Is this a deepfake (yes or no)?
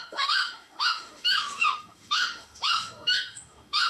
yes